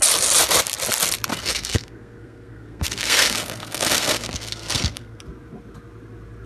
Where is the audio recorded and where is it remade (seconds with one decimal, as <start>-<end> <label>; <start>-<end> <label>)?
0.0-1.3 recorded; 1.3-5.2 remade; 5.2-6.5 recorded